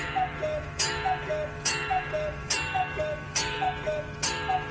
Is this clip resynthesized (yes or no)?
yes